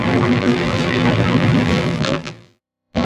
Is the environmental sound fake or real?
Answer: fake